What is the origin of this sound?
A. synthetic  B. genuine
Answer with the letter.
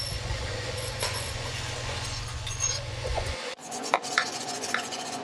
A